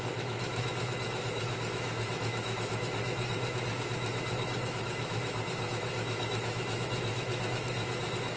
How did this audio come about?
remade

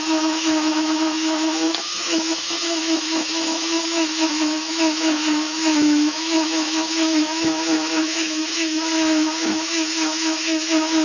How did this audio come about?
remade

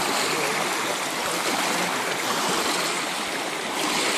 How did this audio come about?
recorded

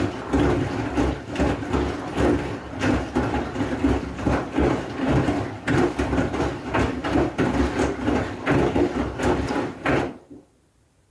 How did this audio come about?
recorded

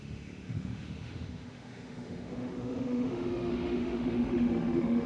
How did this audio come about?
remade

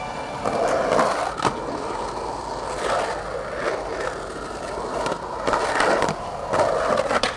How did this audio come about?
recorded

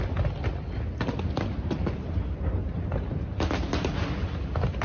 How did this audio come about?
recorded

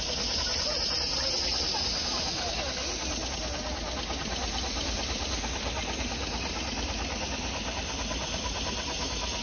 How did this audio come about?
recorded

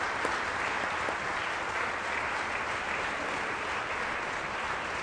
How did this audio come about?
recorded